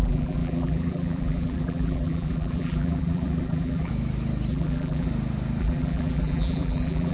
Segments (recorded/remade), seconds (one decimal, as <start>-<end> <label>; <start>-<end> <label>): 0.0-3.9 remade; 3.9-4.5 recorded; 4.5-5.1 remade; 5.1-5.6 recorded; 5.6-7.1 remade